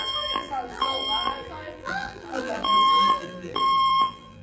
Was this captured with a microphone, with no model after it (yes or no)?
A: no